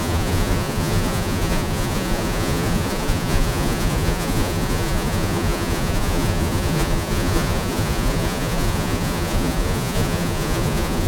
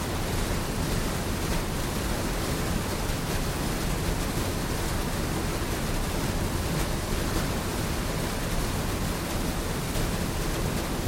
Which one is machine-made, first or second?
first